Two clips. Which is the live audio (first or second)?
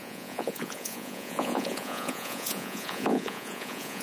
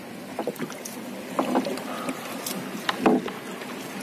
second